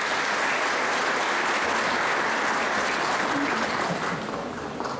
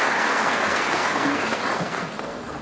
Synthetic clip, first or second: second